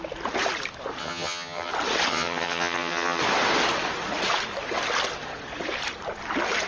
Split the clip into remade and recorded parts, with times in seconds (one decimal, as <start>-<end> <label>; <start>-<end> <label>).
0.0-1.0 recorded; 1.0-1.7 remade; 1.7-2.1 recorded; 2.1-3.2 remade; 3.2-6.7 recorded